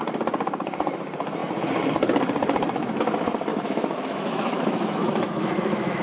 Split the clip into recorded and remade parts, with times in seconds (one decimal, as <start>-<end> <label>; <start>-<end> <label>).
0.0-3.5 recorded; 3.5-6.0 remade